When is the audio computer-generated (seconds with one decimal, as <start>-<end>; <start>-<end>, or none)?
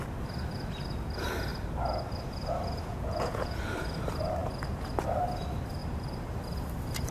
2.9-3.6